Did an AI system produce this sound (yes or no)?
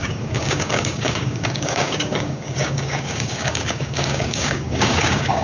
yes